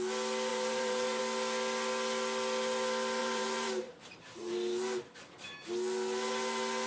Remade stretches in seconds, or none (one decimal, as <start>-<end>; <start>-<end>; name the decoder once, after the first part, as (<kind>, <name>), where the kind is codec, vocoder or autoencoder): 0.5-1.2 (vocoder, BigVGAN v2); 3.2-4.5